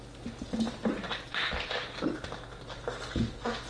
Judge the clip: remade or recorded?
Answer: recorded